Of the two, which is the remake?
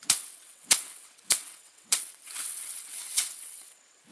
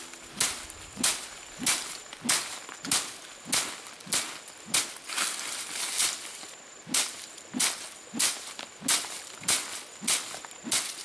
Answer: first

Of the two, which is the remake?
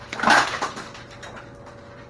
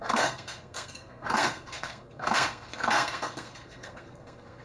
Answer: second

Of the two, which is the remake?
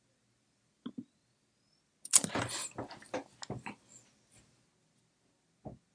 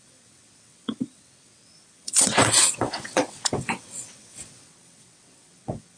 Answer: second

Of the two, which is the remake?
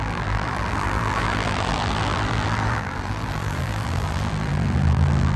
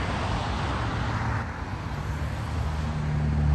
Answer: first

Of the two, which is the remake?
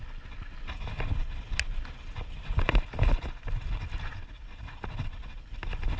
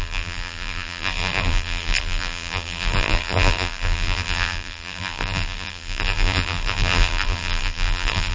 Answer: second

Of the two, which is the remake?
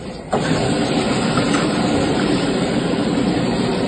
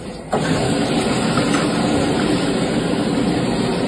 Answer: first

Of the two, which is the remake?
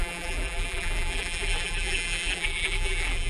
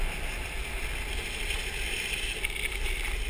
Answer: first